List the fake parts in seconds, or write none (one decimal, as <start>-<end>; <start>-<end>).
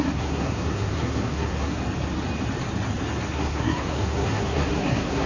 0.0-1.8; 3.3-5.3